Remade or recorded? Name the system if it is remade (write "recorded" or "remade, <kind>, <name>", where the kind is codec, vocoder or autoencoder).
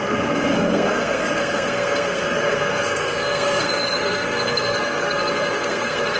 remade, codec, SNAC